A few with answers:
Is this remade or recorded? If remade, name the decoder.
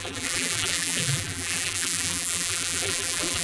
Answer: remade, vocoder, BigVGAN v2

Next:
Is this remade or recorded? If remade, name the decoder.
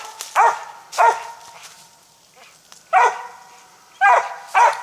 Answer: recorded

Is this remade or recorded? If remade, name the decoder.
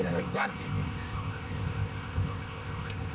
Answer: remade, codec, ZipCodec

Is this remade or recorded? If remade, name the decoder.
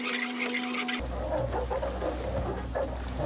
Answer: recorded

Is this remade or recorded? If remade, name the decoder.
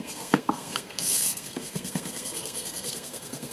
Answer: remade, codec, SNAC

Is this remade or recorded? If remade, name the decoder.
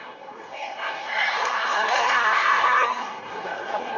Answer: remade, codec, SNAC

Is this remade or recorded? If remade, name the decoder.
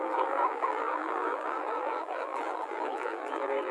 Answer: remade, vocoder, BigVGAN v2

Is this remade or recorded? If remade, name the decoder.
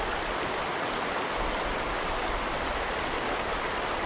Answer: recorded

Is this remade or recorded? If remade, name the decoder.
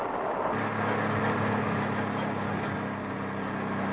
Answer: recorded